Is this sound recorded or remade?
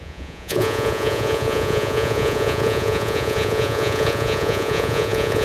remade